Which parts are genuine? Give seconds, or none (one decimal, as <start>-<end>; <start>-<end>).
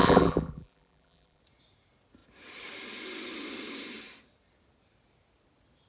1.4-5.9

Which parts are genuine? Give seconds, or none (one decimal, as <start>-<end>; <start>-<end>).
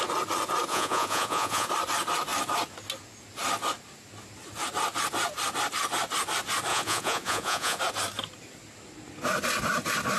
0.0-0.7; 1.7-6.7; 7.8-10.2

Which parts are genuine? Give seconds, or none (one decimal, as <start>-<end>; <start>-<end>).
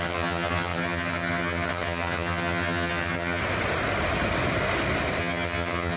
3.4-5.2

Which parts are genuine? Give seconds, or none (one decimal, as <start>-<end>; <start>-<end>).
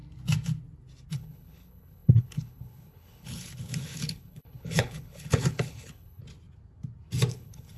0.0-1.1; 6.2-7.3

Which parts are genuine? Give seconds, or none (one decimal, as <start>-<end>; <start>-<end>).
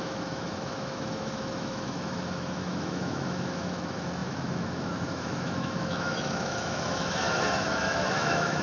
none